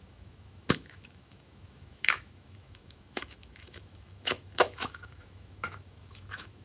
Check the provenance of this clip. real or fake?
fake